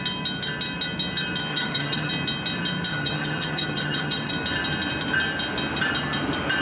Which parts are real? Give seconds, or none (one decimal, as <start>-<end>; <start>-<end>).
0.0-1.5; 2.1-2.9; 4.3-6.6